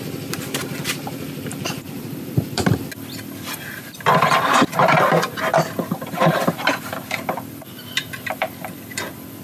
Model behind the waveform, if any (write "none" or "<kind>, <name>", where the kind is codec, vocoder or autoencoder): vocoder, BigVGAN v2